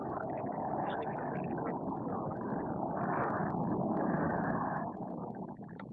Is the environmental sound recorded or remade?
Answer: remade